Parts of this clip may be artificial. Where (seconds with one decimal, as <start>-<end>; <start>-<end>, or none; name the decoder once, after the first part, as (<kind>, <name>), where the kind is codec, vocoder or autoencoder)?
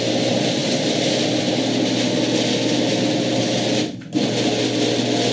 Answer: none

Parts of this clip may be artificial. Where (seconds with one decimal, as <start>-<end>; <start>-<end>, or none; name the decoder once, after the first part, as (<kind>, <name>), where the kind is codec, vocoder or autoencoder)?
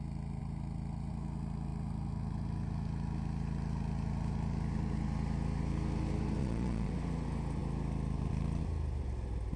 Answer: 6.4-6.9 (vocoder, Vocos)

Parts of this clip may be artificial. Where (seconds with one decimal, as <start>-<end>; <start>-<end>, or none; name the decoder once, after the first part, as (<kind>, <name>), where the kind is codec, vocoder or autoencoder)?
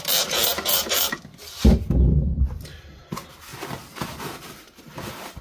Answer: none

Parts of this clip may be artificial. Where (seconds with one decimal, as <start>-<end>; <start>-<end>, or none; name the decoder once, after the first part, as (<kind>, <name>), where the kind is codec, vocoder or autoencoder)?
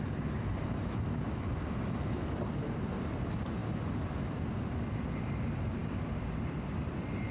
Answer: none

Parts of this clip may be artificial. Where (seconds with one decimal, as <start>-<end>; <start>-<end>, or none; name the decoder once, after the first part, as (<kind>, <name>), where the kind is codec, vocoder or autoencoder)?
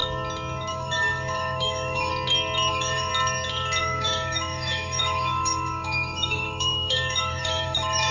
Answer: 0.7-2.1 (autoencoder, DAC-VAE); 2.7-3.1; 3.8-8.1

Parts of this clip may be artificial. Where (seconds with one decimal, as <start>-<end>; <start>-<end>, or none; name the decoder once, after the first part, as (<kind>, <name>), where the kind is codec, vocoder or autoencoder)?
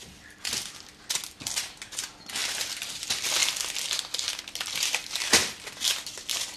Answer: none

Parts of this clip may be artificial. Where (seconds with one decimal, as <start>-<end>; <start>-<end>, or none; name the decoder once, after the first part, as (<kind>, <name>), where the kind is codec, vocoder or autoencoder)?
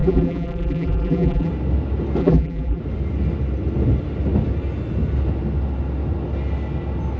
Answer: 0.0-1.5 (vocoder, BigVGAN v2); 2.2-2.8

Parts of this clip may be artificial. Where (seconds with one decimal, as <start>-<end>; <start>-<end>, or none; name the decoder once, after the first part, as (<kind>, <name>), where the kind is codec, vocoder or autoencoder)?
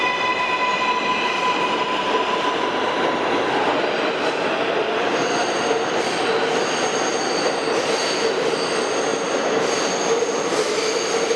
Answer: none